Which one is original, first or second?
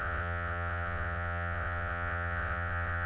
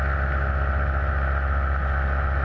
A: second